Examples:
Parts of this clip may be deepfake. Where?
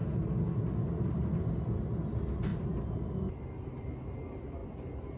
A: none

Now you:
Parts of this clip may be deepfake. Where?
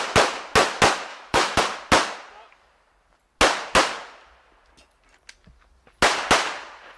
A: 1.1-1.6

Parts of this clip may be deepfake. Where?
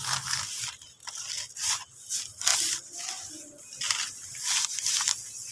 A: none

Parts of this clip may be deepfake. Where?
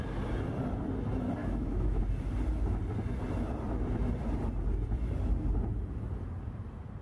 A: 1.4-2.0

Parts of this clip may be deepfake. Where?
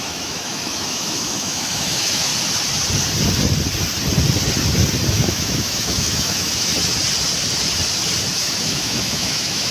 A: 0.0-2.3; 5.1-6.7; 8.3-9.7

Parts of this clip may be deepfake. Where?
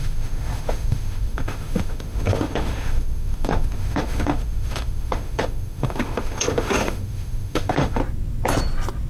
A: 0.0-8.0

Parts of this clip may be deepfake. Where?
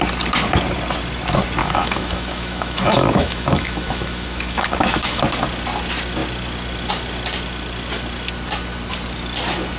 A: 1.6-5.2